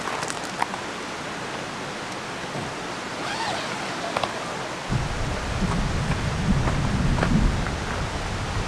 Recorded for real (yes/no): yes